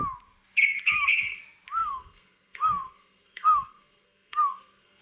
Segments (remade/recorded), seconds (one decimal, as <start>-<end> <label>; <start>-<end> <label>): 0.0-0.6 recorded; 0.6-1.4 remade; 1.4-1.8 recorded; 1.8-5.0 remade